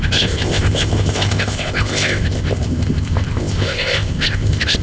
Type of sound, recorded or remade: remade